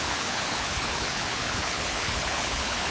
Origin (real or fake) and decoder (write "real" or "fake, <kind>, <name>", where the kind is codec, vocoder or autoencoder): fake, codec, HILCodec